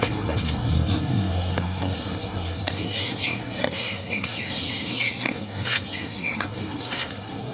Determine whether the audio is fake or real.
fake